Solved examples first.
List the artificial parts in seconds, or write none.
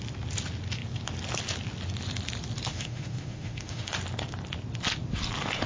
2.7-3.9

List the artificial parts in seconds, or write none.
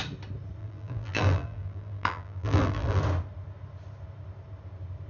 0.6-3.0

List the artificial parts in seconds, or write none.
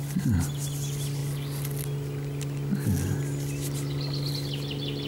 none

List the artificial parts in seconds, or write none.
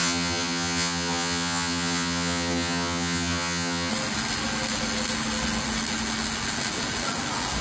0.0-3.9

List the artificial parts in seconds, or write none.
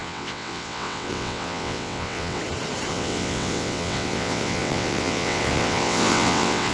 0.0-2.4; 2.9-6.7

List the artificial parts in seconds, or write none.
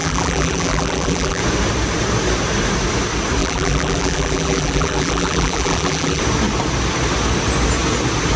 0.0-1.4; 3.4-6.2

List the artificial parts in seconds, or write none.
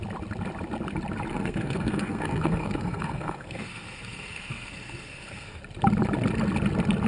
1.3-5.6